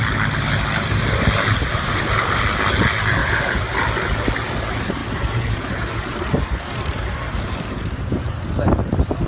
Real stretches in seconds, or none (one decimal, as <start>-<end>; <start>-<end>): 0.0-1.7; 2.4-3.2; 3.8-5.0; 8.3-9.3